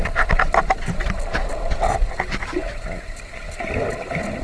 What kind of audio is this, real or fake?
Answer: real